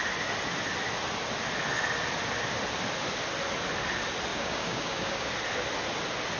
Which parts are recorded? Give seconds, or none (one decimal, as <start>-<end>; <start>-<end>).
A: 0.0-4.3; 5.3-6.4